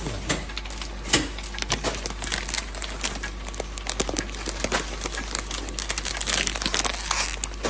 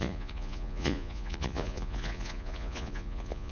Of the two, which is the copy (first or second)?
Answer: second